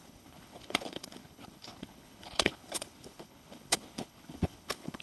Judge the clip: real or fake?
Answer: fake